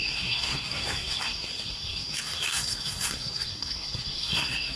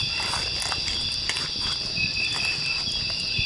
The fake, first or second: first